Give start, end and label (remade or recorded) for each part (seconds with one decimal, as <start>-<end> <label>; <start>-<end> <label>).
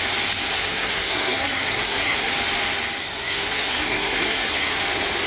0.0-0.5 recorded; 0.5-2.3 remade; 2.3-3.0 recorded; 3.0-4.8 remade; 4.8-5.3 recorded